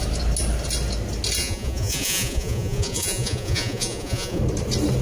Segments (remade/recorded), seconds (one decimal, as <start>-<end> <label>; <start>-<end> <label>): 0.0-1.4 recorded; 1.4-4.4 remade; 4.4-5.0 recorded